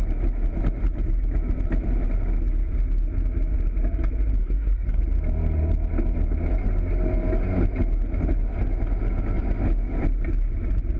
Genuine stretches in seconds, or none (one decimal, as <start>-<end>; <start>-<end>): 0.0-4.4; 5.0-11.0